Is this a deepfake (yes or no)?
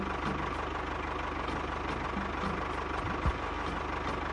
no